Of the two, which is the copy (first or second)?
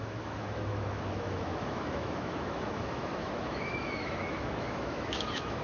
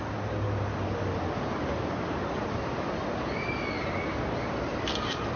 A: first